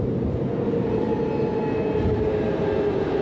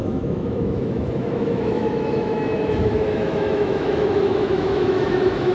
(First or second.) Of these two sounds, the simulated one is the second